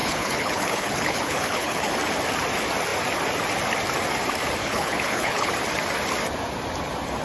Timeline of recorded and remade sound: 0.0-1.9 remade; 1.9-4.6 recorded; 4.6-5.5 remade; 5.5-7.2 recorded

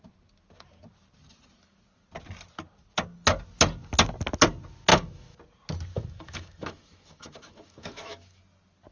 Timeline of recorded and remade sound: 0.0-4.9 recorded; 4.9-5.4 remade; 5.4-5.9 recorded; 5.9-8.4 remade; 8.4-8.9 recorded

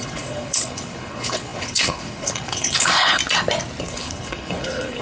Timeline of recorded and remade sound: 0.0-3.2 remade; 3.2-3.8 recorded; 3.8-5.0 remade

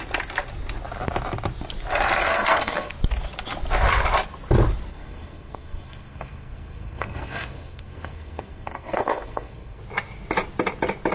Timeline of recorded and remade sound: 0.0-2.3 recorded; 2.3-2.9 remade; 2.9-4.9 recorded; 4.9-9.8 remade; 9.8-11.1 recorded